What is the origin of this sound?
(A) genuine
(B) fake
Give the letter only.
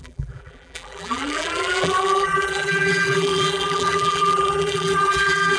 B